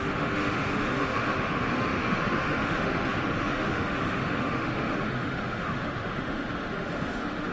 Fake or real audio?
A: fake